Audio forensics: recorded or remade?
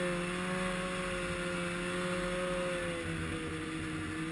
recorded